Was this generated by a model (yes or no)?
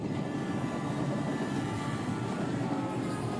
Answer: no